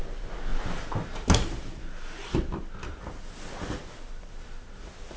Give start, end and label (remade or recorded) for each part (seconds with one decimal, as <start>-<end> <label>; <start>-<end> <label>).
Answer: 0.0-5.2 recorded